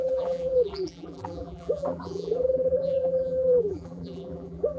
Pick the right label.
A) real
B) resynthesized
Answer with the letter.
B